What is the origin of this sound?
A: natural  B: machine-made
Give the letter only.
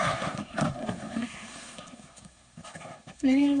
B